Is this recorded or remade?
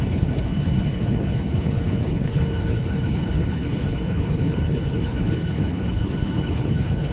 remade